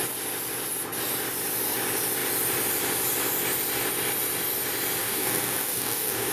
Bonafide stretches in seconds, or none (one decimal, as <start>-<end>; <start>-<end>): 0.0-5.0